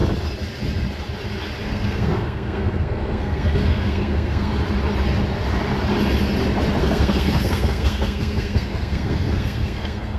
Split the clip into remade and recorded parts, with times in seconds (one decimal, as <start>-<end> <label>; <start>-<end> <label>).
0.0-1.6 recorded; 1.6-4.5 remade; 4.5-6.8 recorded; 6.8-10.2 remade